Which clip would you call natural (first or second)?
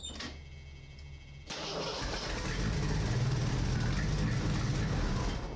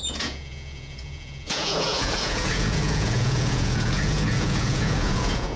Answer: first